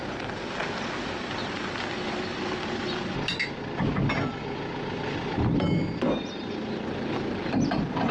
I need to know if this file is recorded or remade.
recorded